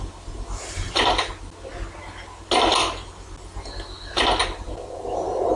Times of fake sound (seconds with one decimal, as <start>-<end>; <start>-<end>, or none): 4.4-5.6